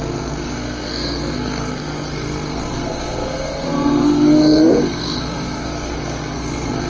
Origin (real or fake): fake